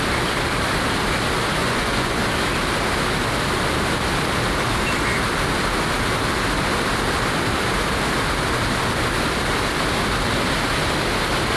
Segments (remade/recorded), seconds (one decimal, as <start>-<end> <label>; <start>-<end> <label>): 0.0-1.6 recorded; 1.6-2.2 remade; 2.2-11.6 recorded